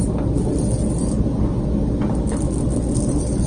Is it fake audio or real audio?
real